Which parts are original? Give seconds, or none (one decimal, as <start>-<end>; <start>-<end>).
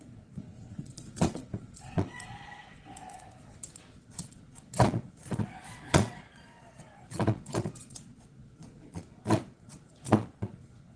none